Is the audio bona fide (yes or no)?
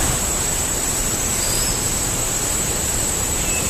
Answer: no